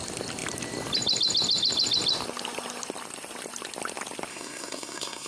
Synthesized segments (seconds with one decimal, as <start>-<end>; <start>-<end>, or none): 4.3-5.3